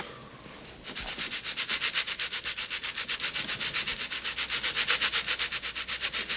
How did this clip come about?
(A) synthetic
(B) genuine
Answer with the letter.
B